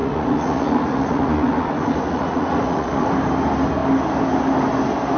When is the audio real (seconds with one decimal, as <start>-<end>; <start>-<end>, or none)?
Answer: 3.1-5.2